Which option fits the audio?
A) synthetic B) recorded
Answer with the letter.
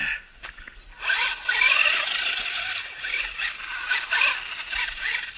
B